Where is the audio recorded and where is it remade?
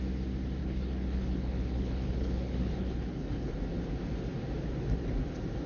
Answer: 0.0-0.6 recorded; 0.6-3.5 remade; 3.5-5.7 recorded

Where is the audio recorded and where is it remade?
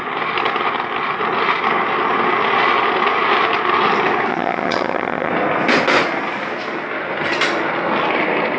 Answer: 0.0-4.3 recorded; 4.3-5.3 remade; 5.3-8.6 recorded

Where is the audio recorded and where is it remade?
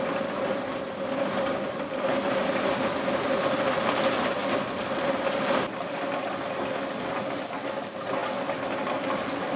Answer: 0.0-9.6 recorded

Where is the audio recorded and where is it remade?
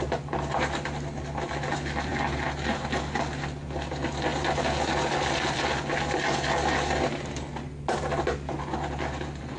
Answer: 0.0-9.6 recorded